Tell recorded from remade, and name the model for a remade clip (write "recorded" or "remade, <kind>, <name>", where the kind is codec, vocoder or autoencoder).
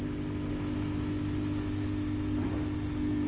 recorded